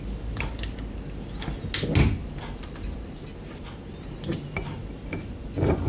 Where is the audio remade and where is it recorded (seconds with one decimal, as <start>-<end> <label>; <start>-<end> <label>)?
0.0-2.2 recorded; 2.2-3.2 remade; 3.2-5.9 recorded